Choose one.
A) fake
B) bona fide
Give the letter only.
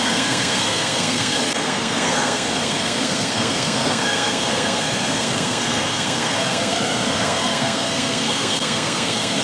A